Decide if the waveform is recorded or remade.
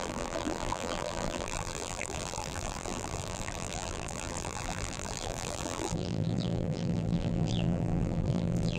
remade